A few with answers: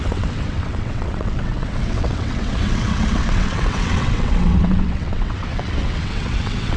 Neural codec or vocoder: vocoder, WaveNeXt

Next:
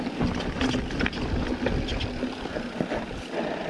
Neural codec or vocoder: none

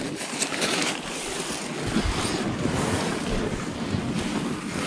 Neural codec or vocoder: none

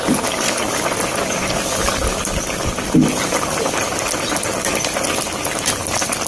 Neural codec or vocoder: none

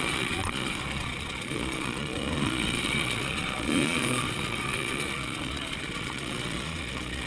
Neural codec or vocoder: vocoder, Vocos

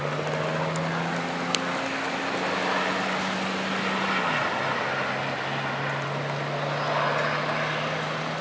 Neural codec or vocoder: none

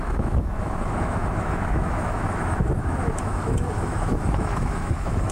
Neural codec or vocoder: autoencoder, DAC-VAE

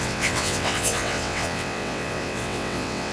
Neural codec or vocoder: vocoder, WaveNeXt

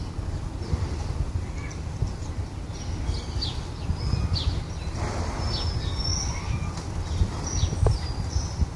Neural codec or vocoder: none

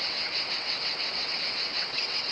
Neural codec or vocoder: vocoder, WaveNeXt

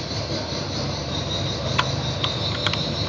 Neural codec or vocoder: vocoder, BigVGAN v2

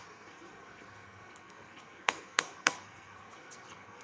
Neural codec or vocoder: codec, SNAC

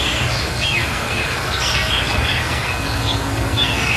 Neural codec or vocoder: codec, SNAC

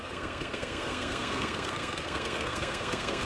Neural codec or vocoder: codec, SNAC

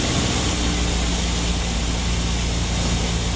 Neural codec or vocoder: none